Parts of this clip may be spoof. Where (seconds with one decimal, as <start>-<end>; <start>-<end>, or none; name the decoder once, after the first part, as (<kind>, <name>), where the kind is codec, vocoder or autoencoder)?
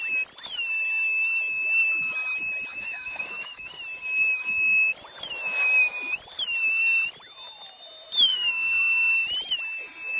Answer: 2.7-3.7 (codec, DAC); 8.3-9.1